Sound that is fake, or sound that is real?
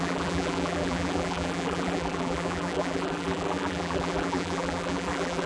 fake